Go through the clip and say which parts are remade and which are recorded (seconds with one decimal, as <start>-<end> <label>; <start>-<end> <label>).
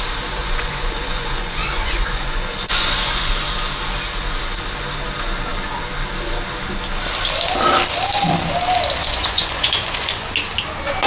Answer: 0.0-0.4 recorded; 0.4-3.3 remade; 3.3-9.0 recorded; 9.0-10.3 remade; 10.3-11.1 recorded